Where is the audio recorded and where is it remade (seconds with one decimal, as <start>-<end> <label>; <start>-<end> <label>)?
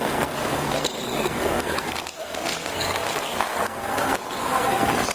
0.0-5.1 remade